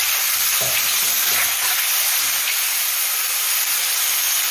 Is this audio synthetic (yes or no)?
no